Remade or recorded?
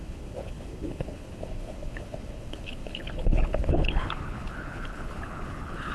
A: remade